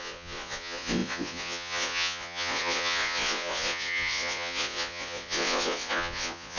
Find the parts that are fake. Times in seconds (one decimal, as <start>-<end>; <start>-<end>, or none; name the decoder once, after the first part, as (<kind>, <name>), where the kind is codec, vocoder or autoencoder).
0.0-6.6 (vocoder, Vocos)

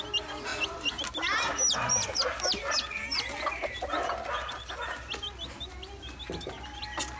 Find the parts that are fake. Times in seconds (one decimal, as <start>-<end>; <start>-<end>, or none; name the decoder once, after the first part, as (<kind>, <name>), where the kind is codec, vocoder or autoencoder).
none

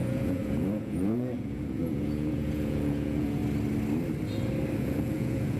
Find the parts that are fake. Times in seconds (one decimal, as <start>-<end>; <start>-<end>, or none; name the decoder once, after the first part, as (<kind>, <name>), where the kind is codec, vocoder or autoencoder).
0.0-3.4 (vocoder, Vocos); 4.8-5.6

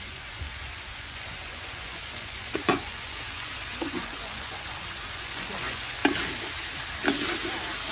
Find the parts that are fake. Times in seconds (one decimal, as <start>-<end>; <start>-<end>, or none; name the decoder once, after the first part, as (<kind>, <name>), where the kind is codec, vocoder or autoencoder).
0.0-6.0 (vocoder, Vocos)

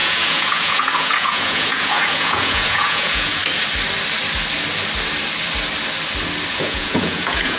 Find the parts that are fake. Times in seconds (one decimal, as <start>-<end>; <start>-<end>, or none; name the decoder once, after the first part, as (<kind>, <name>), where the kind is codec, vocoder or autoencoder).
0.0-3.4 (vocoder, Vocos); 6.5-7.6

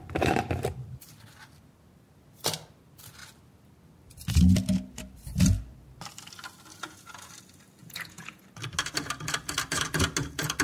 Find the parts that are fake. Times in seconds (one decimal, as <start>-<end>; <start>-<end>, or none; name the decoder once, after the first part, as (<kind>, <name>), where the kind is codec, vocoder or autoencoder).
6.7-7.3 (vocoder, Vocos); 7.8-8.4